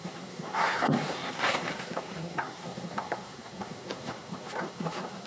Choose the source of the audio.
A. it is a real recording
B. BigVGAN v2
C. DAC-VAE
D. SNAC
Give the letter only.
D